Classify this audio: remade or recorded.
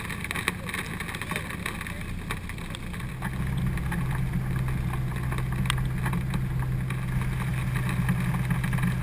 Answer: recorded